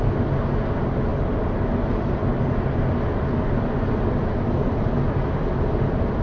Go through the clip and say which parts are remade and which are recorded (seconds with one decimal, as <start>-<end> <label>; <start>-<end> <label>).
0.0-6.2 recorded